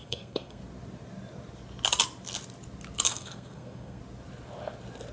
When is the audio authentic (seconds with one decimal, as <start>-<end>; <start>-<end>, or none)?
0.6-3.1; 4.0-5.1